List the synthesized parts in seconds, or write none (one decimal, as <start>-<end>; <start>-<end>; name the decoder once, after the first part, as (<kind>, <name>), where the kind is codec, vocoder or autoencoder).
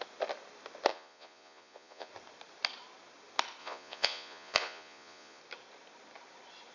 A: 0.9-2.1 (vocoder, Vocos); 3.6-5.4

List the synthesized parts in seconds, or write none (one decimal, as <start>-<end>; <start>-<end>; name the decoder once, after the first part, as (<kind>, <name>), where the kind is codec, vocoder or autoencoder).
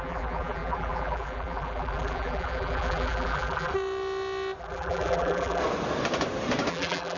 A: 0.0-3.7 (vocoder, BigVGAN v2); 4.6-5.6; 6.7-7.2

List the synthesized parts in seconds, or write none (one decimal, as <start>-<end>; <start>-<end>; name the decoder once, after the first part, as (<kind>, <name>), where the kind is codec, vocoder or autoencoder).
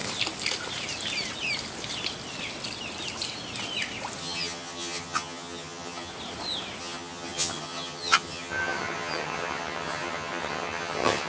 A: 4.2-6.1 (vocoder, HiFi-GAN); 6.8-11.3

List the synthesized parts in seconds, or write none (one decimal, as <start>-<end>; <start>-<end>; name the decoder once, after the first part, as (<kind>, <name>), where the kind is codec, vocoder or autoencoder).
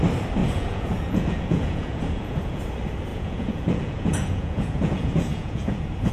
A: 0.4-2.6 (vocoder, Vocos); 3.1-6.1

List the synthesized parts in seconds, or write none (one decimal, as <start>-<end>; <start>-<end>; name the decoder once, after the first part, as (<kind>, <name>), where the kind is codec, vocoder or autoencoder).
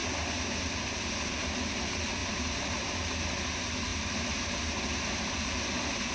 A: 0.0-1.2 (vocoder, BigVGAN v2); 2.2-3.2; 3.9-6.1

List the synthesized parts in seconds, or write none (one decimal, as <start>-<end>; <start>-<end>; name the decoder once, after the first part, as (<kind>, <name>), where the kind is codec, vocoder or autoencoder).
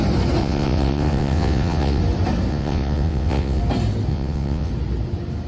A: 0.4-2.0 (vocoder, WaveNeXt); 2.5-3.6; 4.1-4.7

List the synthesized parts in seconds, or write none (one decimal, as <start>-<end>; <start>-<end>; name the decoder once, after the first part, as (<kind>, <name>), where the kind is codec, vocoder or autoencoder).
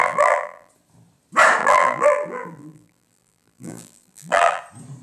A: 0.0-0.7 (vocoder, BigVGAN v2); 1.6-4.6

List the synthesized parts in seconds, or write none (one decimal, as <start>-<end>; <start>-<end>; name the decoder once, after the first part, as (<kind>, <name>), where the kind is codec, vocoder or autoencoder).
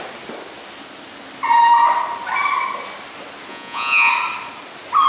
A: 3.5-4.1 (vocoder, Vocos)